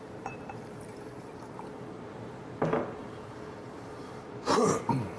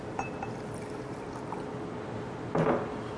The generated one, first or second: first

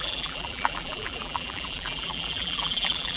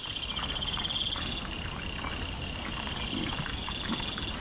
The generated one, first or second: first